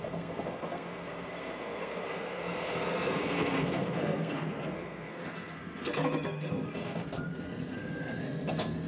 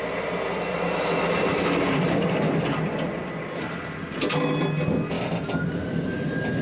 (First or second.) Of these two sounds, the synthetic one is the first